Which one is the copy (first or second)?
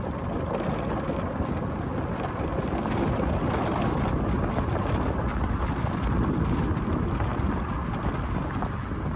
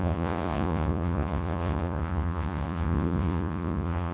second